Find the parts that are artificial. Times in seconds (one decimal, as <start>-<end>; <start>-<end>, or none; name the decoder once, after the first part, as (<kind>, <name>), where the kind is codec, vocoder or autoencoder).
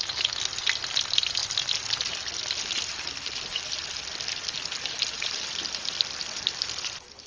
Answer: none